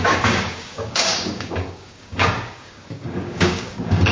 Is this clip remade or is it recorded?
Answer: remade